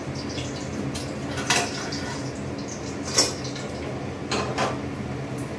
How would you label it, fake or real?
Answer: real